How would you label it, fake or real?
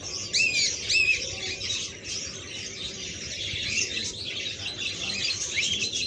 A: real